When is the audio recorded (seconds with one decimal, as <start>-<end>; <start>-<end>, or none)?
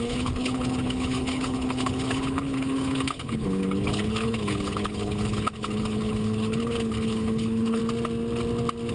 7.8-8.9